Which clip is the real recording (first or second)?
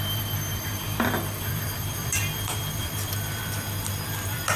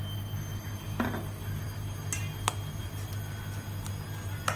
second